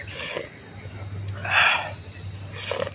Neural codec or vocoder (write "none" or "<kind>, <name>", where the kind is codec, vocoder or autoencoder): none